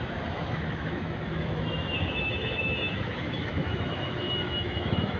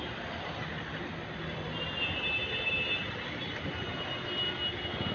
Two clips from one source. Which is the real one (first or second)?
second